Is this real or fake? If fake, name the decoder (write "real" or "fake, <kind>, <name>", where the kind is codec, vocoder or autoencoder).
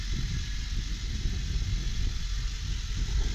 real